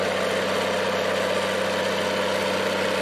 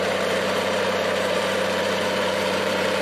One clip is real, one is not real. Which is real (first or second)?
first